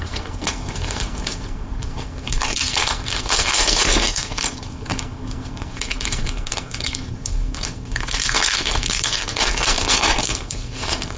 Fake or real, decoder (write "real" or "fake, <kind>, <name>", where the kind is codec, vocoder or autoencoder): fake, codec, SNAC